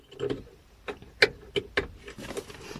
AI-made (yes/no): no